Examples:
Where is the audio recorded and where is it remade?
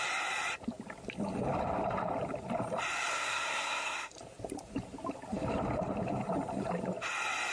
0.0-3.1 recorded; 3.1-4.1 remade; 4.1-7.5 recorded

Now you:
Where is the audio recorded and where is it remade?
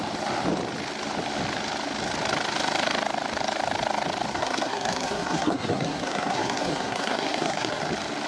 0.0-4.3 recorded; 4.3-7.8 remade; 7.8-8.3 recorded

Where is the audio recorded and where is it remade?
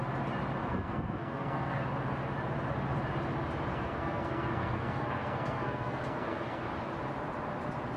0.0-0.6 recorded; 0.6-1.8 remade; 1.8-3.7 recorded; 3.7-6.6 remade; 6.6-8.0 recorded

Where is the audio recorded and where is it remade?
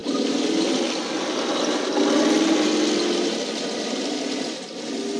0.0-5.2 recorded